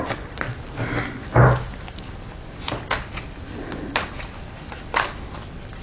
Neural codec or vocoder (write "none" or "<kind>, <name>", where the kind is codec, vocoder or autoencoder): none